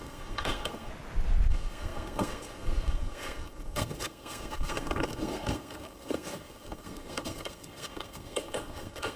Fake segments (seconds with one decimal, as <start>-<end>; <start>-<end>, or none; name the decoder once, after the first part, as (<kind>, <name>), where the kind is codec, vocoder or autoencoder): 0.0-0.9 (codec, SNAC); 1.5-9.2